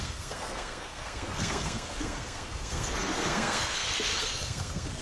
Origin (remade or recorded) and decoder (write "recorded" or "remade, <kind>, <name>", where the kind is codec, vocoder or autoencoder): remade, codec, SNAC